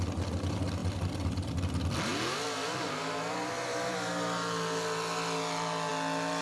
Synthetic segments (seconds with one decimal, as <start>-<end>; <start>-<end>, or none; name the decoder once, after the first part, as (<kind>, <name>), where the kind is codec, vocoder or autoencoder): none